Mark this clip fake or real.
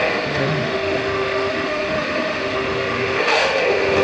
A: fake